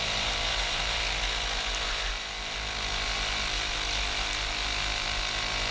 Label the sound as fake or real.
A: real